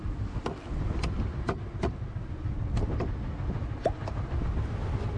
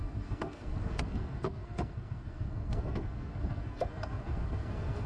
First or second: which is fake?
second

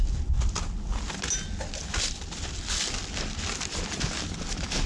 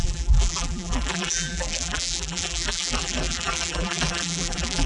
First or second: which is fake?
second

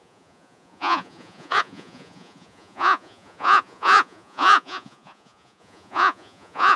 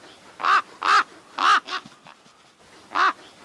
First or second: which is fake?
first